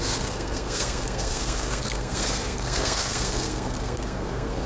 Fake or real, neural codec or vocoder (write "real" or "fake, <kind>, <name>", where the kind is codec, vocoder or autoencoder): fake, codec, SNAC